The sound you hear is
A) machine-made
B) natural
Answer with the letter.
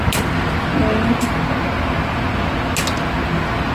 B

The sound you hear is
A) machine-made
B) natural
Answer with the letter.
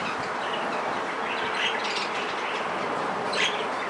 A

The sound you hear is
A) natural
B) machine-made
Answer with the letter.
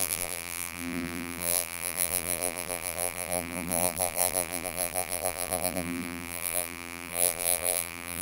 B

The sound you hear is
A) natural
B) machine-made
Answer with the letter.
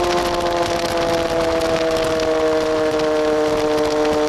A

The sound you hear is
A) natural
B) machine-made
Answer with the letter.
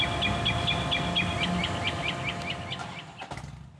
A